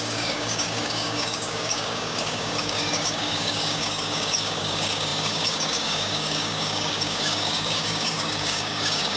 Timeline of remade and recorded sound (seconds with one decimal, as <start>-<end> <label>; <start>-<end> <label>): 0.0-9.2 remade